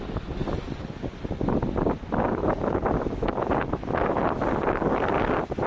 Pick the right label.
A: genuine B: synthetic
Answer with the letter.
A